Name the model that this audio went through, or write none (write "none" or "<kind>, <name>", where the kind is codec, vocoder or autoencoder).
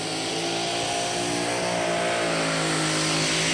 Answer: none